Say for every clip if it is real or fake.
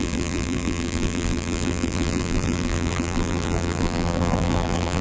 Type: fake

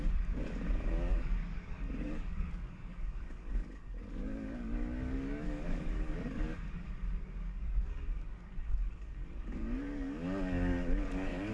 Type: fake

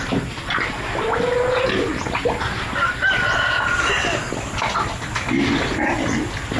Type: real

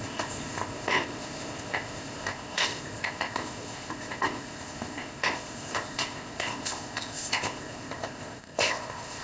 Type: fake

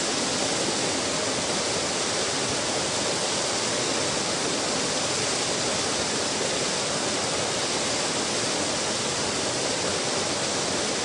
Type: real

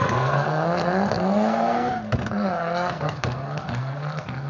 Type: fake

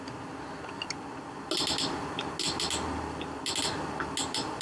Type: real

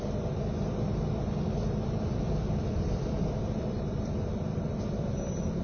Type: fake